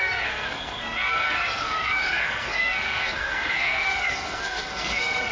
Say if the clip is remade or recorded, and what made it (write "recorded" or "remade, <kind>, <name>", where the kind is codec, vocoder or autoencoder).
remade, codec, SNAC